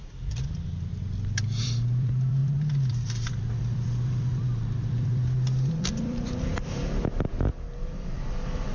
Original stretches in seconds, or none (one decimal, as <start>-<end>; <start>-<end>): 0.9-1.6; 6.5-7.1